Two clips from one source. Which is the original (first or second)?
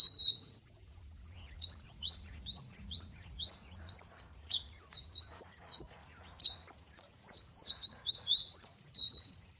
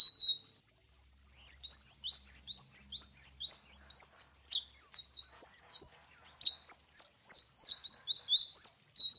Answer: second